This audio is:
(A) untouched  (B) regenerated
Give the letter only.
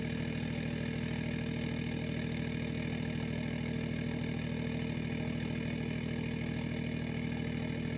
A